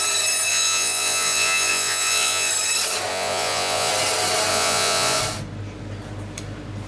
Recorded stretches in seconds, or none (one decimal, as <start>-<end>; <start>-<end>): 0.0-0.5; 2.5-3.1; 3.9-4.5; 5.2-6.9